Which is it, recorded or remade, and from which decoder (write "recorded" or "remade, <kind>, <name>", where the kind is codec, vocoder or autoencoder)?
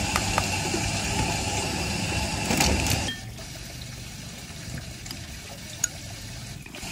remade, vocoder, BigVGAN v2